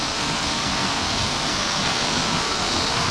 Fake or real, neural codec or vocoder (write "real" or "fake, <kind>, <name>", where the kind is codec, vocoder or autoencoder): fake, codec, SNAC